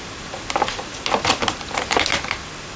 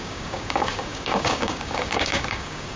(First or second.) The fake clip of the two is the second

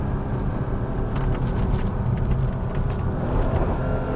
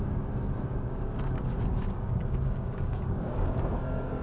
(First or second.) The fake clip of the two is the second